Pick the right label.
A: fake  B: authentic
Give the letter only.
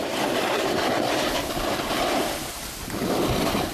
B